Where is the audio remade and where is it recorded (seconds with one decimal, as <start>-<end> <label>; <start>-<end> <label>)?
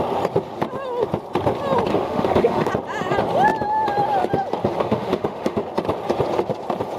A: 0.0-1.9 recorded; 1.9-2.7 remade; 2.7-4.8 recorded; 4.8-5.6 remade; 5.6-7.0 recorded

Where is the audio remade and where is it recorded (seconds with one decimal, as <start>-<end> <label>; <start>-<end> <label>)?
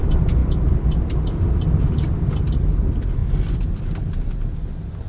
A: 0.0-5.1 recorded